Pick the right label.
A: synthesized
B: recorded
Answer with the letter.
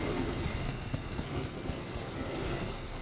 A